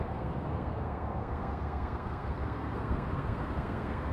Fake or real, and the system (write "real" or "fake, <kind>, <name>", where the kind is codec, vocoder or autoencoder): fake, codec, SNAC